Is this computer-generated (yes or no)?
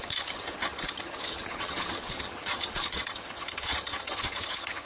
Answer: yes